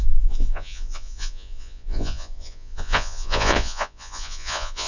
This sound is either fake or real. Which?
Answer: fake